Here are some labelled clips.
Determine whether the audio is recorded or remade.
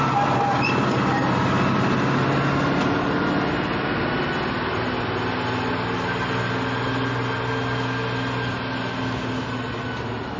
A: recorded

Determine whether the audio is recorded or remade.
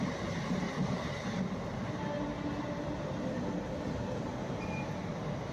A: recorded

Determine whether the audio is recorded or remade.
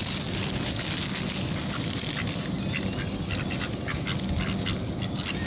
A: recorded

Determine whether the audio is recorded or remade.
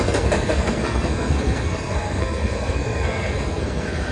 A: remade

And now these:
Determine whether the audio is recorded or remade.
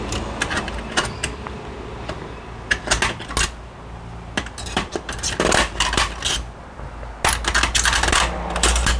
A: recorded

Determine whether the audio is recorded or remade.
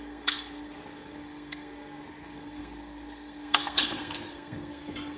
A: remade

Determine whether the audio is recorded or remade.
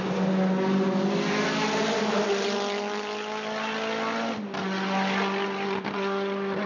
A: recorded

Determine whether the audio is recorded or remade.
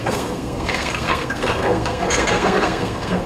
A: remade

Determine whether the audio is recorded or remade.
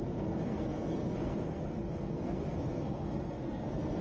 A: remade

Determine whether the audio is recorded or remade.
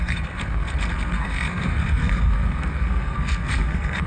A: remade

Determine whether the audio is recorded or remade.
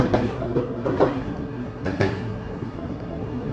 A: remade